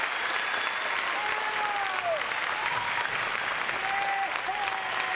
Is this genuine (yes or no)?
yes